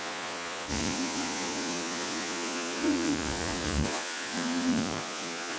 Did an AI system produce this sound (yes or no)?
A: yes